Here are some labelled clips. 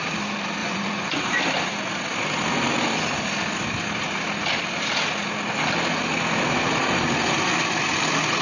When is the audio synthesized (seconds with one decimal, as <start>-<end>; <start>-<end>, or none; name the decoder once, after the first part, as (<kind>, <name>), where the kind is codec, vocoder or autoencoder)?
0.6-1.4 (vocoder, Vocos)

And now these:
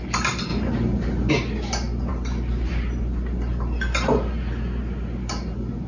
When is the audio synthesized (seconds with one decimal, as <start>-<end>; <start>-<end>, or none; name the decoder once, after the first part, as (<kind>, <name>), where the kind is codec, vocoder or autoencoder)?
none

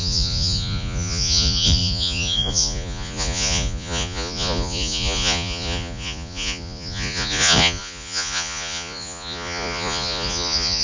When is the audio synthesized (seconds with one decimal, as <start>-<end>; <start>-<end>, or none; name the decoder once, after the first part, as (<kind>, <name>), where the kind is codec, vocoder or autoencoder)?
0.0-10.8 (vocoder, Vocos)

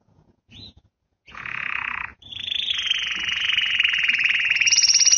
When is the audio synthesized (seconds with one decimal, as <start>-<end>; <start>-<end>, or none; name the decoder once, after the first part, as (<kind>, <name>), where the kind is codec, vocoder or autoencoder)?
0.0-5.2 (vocoder, Vocos)

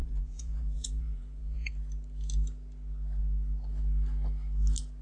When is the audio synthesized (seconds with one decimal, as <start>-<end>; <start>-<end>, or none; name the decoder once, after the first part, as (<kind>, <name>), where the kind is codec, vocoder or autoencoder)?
0.0-1.7 (vocoder, Vocos)

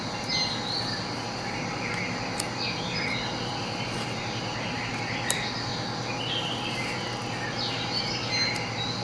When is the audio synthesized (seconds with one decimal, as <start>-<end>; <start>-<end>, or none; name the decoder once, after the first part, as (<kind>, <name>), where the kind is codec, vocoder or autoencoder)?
none

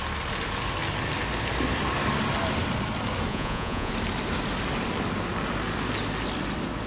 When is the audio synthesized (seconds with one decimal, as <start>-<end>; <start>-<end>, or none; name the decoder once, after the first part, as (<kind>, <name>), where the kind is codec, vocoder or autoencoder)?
3.3-3.9 (vocoder, Vocos)

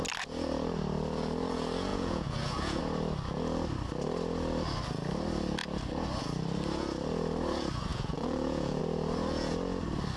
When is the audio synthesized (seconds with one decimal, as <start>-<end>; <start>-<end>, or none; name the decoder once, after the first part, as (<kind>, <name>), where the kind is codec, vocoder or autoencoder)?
1.9-2.8 (vocoder, Vocos); 7.9-8.8